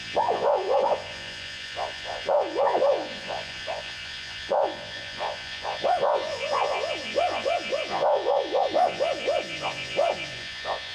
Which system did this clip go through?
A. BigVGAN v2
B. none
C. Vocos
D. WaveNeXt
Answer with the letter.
C